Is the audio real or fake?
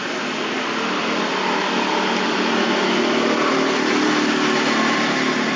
real